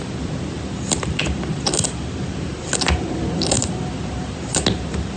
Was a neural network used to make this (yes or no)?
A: no